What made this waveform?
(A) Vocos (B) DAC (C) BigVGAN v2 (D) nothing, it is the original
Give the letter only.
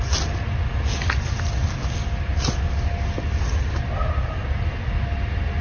D